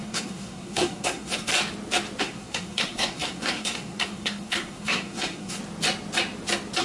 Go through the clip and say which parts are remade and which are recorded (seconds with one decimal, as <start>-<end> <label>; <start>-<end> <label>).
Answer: 0.0-1.5 remade; 1.5-2.2 recorded; 2.2-5.6 remade; 5.6-6.8 recorded